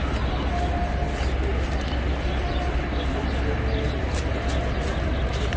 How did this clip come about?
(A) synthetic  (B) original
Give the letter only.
B